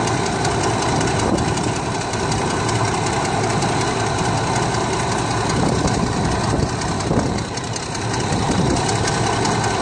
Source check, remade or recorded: recorded